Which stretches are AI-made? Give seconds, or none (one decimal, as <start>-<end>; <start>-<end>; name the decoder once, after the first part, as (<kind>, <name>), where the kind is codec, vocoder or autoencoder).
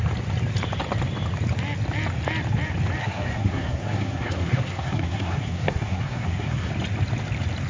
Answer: 3.0-6.7 (codec, SNAC)